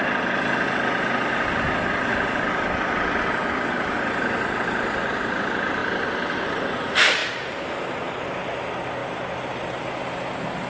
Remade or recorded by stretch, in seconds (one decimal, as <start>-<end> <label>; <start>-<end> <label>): 0.0-10.7 recorded